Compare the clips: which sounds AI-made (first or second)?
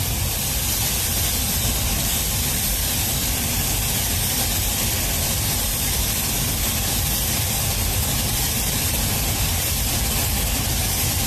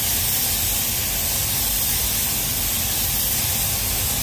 first